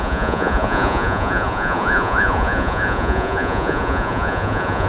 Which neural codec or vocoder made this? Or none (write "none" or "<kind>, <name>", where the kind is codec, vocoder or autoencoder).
vocoder, Vocos